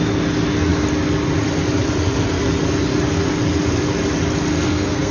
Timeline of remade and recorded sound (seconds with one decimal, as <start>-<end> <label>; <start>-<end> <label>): 0.0-4.5 recorded; 4.5-5.1 remade